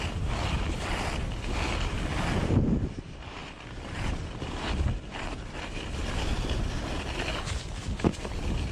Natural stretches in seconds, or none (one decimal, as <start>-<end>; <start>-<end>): 0.0-8.7